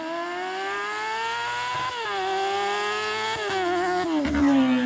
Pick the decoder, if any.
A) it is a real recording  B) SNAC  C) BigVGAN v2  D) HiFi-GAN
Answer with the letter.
A